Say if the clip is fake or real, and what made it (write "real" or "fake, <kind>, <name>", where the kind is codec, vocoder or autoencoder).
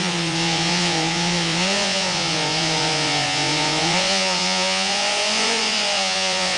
fake, vocoder, Vocos